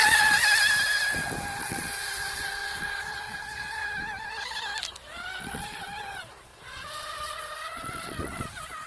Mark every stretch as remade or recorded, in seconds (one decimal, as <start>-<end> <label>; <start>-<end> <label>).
0.0-0.4 remade; 0.4-1.6 recorded; 1.6-3.8 remade; 3.8-5.4 recorded; 5.4-8.9 remade